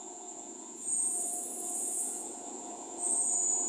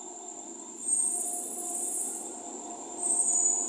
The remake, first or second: first